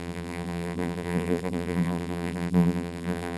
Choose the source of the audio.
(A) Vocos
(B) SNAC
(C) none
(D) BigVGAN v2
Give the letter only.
D